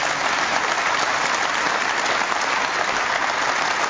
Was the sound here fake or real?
real